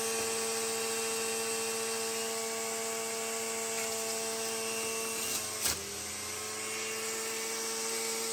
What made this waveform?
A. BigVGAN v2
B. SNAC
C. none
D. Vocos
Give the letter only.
C